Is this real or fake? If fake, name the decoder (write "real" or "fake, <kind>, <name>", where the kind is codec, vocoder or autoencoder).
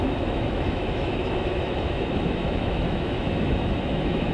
fake, autoencoder, DAC-VAE